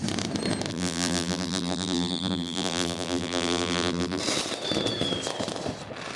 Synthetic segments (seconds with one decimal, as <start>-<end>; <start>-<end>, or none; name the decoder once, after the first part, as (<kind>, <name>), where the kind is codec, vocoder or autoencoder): 0.7-4.2 (vocoder, BigVGAN v2)

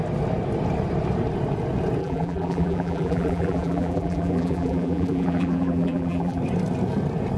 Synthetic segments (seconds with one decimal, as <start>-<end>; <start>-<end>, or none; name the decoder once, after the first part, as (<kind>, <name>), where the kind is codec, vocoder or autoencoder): 2.0-6.4 (vocoder, BigVGAN v2)